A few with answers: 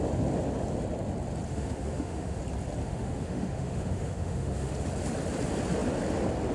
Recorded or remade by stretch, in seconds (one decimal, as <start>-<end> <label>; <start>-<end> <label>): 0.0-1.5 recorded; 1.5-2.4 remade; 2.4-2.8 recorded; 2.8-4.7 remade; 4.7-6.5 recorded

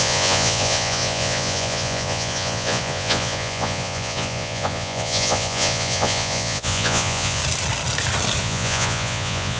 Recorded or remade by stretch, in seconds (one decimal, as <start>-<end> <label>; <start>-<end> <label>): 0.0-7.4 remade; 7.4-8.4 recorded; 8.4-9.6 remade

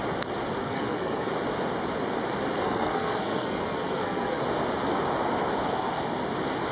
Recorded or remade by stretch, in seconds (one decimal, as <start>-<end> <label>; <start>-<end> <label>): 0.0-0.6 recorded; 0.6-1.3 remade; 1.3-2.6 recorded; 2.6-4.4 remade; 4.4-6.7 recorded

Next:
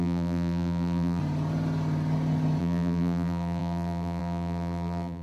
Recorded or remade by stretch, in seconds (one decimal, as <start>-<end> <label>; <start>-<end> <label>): 0.0-1.2 remade; 1.2-2.6 recorded; 2.6-5.2 remade

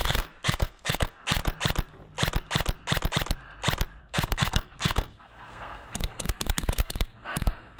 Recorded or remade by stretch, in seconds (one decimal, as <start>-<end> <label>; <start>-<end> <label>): 0.0-1.4 remade; 1.4-4.0 recorded; 4.0-7.8 remade